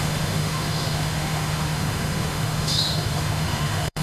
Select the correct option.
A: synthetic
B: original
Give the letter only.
A